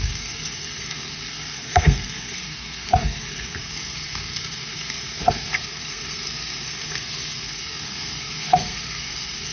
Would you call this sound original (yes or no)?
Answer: no